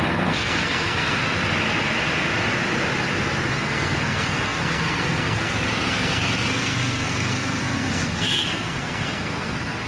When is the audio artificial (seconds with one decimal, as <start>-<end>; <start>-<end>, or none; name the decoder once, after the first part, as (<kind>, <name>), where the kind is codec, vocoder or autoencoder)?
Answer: 0.0-1.4 (codec, SNAC); 3.5-9.9